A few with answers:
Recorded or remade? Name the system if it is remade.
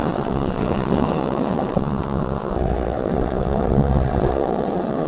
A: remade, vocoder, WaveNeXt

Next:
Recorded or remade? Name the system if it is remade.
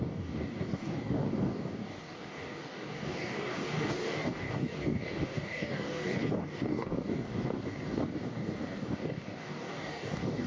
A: remade, codec, DAC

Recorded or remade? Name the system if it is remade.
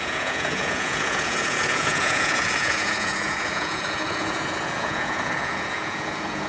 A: remade, vocoder, Vocos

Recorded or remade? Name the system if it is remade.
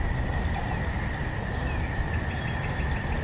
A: recorded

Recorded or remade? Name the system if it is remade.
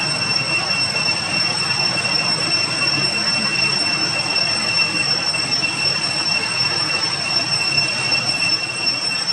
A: recorded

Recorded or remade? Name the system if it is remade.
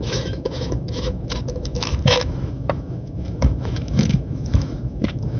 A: remade, autoencoder, DAC-VAE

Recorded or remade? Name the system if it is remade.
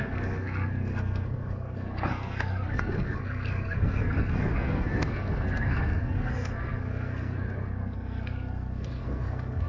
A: remade, codec, SNAC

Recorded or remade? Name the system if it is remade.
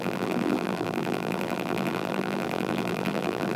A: remade, vocoder, BigVGAN v2